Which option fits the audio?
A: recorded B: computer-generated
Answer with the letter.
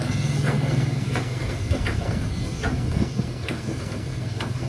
B